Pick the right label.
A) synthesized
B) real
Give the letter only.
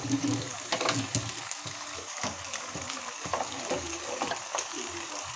A